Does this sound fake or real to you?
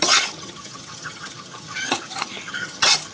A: fake